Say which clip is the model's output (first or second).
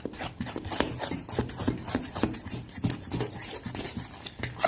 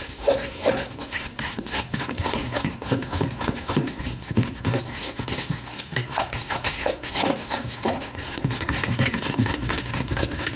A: second